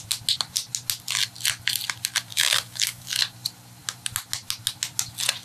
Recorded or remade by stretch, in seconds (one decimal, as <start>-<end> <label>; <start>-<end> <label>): 0.0-2.3 recorded; 2.3-3.2 remade; 3.2-5.4 recorded